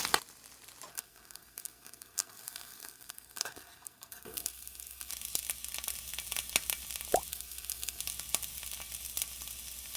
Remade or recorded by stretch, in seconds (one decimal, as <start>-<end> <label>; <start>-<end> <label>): 0.0-0.9 recorded; 0.9-5.1 remade; 5.1-7.3 recorded; 7.3-8.0 remade; 8.0-10.0 recorded